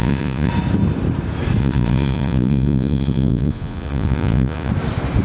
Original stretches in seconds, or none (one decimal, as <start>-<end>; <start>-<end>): 0.5-1.6; 4.7-5.2